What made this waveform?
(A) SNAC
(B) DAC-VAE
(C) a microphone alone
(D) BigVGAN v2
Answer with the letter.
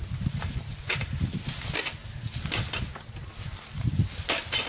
C